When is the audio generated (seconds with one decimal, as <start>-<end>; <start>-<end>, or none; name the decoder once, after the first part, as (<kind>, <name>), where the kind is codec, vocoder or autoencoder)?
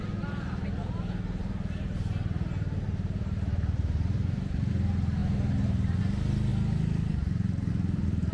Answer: 0.8-4.7 (vocoder, BigVGAN v2); 5.2-6.0